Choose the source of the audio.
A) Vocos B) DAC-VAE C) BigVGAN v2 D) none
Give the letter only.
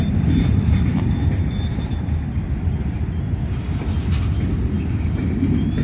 D